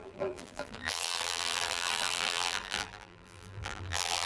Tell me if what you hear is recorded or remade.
remade